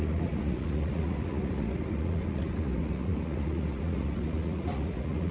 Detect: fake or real fake